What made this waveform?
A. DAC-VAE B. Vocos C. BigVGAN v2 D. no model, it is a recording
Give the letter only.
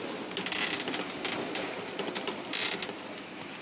D